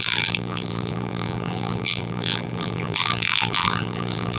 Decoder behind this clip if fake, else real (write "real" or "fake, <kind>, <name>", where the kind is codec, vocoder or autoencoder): fake, vocoder, BigVGAN v2